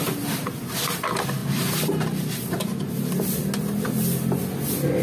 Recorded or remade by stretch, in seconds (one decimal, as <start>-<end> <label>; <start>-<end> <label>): 0.0-5.0 recorded